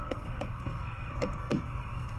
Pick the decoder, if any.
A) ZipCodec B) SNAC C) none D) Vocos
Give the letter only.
B